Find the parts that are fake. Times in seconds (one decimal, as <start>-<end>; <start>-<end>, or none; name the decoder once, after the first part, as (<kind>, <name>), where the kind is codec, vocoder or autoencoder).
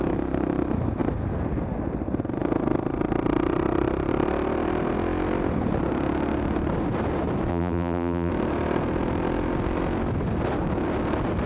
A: 7.5-8.3 (vocoder, BigVGAN v2)